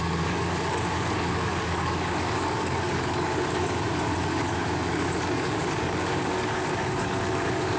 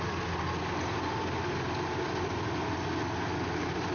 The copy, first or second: first